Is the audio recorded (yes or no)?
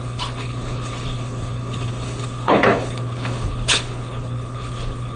no